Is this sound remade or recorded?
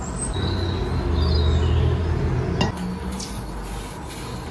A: recorded